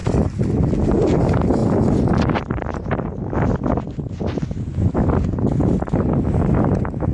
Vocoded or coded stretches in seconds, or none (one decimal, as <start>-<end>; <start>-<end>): none